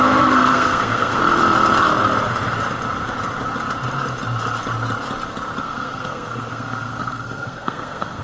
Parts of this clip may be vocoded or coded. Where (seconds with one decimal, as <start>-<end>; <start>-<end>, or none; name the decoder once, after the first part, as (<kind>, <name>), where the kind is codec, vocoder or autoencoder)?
0.0-1.2 (codec, SNAC); 5.6-8.2